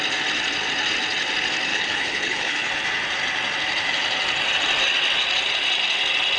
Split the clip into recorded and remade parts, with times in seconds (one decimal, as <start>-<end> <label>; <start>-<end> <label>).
0.0-1.7 recorded; 1.7-2.7 remade; 2.7-6.4 recorded